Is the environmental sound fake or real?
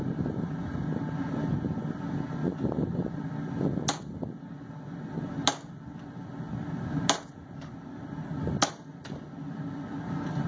real